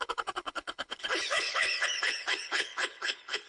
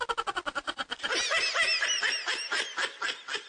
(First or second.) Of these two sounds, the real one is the second